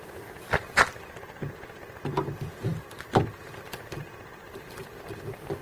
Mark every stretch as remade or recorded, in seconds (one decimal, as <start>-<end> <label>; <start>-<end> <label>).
0.0-5.6 recorded